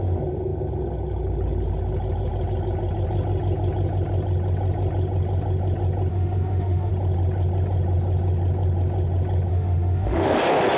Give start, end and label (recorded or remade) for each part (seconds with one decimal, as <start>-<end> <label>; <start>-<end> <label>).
0.0-6.1 recorded; 6.1-6.9 remade; 6.9-9.5 recorded; 9.5-10.4 remade; 10.4-10.8 recorded